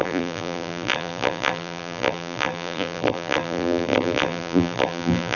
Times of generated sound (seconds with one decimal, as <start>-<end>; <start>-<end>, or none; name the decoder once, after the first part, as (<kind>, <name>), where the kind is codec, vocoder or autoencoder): 0.0-5.4 (vocoder, BigVGAN v2)